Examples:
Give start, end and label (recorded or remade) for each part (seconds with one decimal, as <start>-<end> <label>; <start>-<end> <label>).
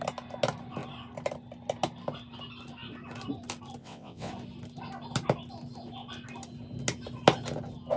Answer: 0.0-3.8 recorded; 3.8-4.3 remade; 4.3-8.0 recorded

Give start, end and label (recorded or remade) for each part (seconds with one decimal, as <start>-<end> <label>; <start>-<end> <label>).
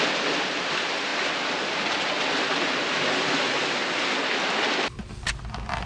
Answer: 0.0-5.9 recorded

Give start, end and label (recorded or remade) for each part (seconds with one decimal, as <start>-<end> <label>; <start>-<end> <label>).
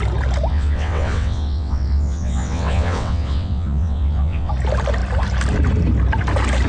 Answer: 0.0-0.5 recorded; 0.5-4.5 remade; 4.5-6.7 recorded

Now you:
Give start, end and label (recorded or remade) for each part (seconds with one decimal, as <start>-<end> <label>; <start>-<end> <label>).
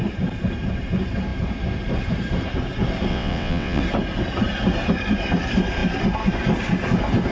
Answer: 0.0-3.1 recorded; 3.1-3.8 remade; 3.8-7.3 recorded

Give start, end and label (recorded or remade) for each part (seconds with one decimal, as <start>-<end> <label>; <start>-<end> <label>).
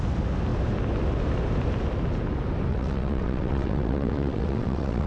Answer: 0.0-2.7 recorded; 2.7-5.1 remade